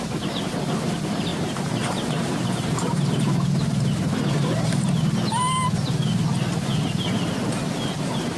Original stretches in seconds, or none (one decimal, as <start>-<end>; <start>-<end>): 0.0-1.3; 4.9-8.4